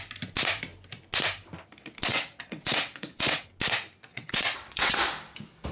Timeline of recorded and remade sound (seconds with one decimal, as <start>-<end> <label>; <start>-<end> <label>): 0.0-2.1 recorded; 2.1-3.5 remade; 3.5-4.1 recorded; 4.1-5.0 remade; 5.0-5.7 recorded